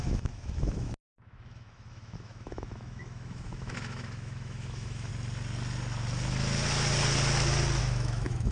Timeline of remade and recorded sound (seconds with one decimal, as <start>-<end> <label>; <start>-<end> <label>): 0.0-5.1 remade; 5.1-7.8 recorded; 7.8-8.5 remade